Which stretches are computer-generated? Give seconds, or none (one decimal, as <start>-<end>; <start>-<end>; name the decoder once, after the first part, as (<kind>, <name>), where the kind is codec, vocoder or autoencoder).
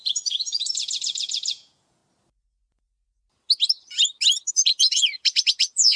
0.0-2.0 (vocoder, Vocos); 4.5-6.0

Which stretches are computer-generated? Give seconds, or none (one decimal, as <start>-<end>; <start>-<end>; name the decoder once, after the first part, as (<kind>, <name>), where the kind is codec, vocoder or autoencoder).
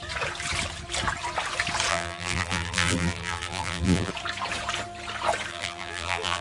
1.9-4.1 (vocoder, BigVGAN v2); 5.5-6.4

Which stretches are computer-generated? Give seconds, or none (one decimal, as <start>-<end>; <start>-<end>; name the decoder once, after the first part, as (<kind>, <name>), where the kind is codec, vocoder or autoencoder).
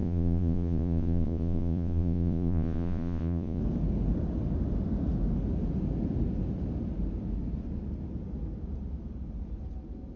0.0-3.6 (vocoder, Vocos)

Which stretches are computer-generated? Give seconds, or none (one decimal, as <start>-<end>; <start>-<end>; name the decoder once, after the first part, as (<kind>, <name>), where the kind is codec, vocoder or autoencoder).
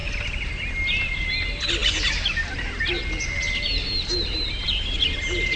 none